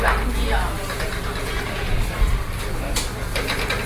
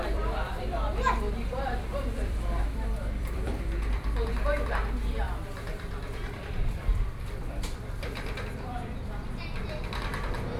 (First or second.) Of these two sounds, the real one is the first